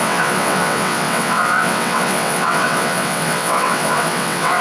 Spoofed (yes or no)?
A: yes